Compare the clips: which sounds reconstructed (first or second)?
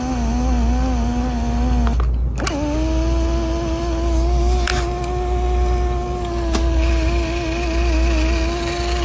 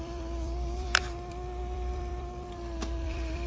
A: second